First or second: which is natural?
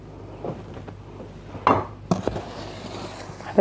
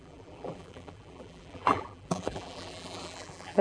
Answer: first